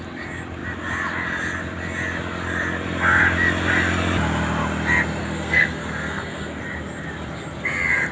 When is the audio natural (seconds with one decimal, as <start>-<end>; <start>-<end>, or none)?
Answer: 0.0-5.2; 6.6-8.1